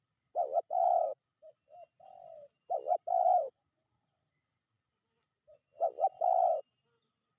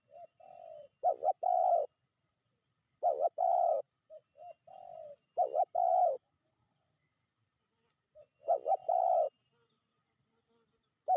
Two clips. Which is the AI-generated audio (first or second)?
first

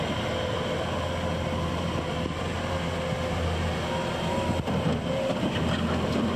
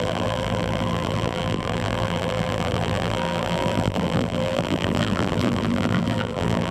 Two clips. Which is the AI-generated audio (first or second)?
second